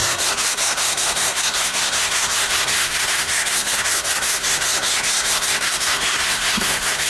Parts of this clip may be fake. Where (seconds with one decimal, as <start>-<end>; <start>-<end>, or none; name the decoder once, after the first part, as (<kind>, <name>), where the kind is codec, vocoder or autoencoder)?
0.0-7.1 (codec, SNAC)